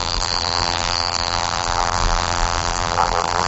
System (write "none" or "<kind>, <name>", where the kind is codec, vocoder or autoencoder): vocoder, BigVGAN v2